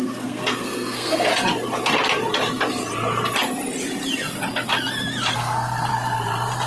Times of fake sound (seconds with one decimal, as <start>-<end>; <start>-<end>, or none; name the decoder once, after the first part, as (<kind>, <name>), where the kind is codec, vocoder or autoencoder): 0.0-1.3 (codec, SNAC); 5.3-5.9